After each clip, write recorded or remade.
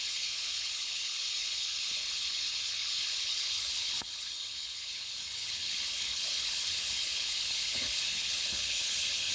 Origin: remade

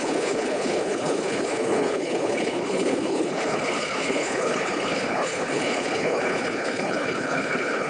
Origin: remade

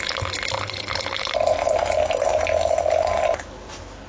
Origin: recorded